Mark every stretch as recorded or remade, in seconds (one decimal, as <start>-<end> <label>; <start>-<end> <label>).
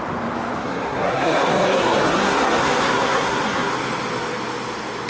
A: 0.0-0.6 recorded; 0.6-3.7 remade; 3.7-5.1 recorded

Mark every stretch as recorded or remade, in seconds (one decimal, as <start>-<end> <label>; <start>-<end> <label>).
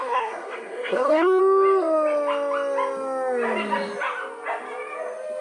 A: 0.0-1.4 remade; 1.4-5.4 recorded